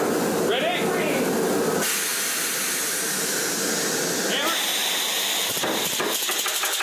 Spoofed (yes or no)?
no